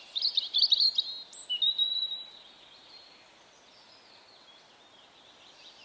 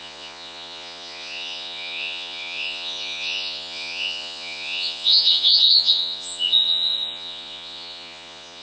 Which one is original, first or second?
first